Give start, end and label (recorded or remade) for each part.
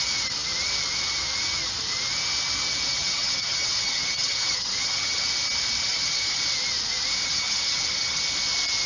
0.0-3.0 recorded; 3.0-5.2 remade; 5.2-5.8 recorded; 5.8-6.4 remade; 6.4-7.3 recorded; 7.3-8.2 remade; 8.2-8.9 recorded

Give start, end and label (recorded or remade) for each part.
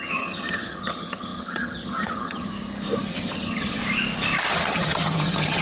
0.0-2.5 remade; 2.5-3.1 recorded; 3.1-3.8 remade; 3.8-4.5 recorded; 4.5-5.6 remade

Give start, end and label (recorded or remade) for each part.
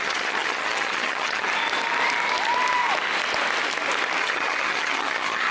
0.0-1.5 remade; 1.5-4.2 recorded; 4.2-5.5 remade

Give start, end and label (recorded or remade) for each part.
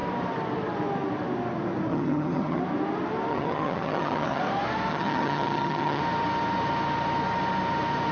0.0-1.9 recorded; 1.9-2.6 remade; 2.6-3.3 recorded; 3.3-4.4 remade; 4.4-4.9 recorded; 4.9-6.0 remade; 6.0-8.1 recorded